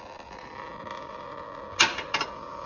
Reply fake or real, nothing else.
real